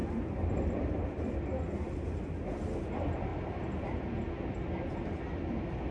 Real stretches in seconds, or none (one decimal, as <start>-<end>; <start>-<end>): 2.0-5.9